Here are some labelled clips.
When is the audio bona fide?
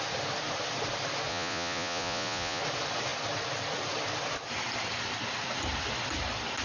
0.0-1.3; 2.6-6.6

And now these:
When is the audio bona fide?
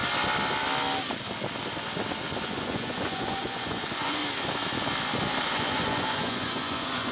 0.0-2.4; 4.2-5.4